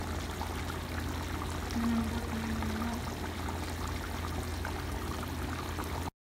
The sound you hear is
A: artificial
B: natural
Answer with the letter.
B